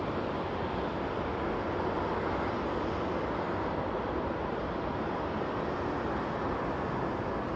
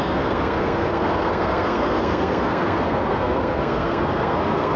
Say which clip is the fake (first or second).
second